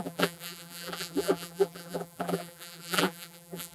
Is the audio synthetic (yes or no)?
yes